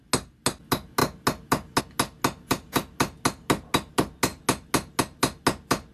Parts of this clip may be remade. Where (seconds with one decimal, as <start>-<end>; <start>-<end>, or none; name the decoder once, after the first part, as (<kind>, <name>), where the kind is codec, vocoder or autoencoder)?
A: none